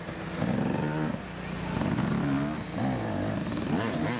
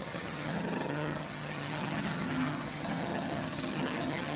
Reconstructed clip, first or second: second